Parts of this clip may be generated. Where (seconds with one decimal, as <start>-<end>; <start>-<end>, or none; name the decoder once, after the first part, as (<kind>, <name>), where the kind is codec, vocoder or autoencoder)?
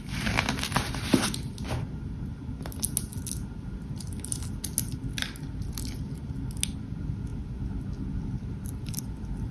none